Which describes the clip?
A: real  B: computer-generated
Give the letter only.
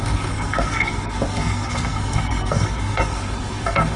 B